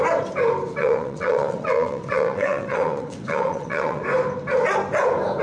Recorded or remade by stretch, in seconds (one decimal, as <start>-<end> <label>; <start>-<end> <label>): 0.0-0.8 recorded; 0.8-4.0 remade; 4.0-5.4 recorded